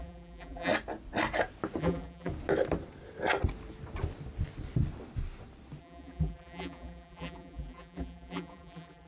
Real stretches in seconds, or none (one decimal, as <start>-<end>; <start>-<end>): 0.7-1.8; 2.3-5.8